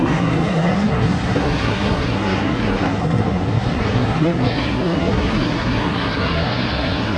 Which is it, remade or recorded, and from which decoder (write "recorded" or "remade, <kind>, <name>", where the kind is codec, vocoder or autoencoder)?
remade, codec, SNAC